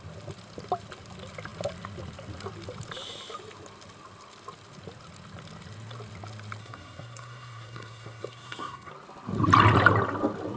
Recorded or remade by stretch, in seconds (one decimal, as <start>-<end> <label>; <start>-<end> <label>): 0.0-6.6 recorded; 6.6-8.9 remade; 8.9-10.6 recorded